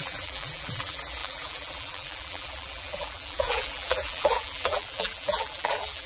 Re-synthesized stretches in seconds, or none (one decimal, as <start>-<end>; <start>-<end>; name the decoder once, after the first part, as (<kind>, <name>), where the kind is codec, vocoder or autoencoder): 0.0-6.1 (vocoder, BigVGAN v2)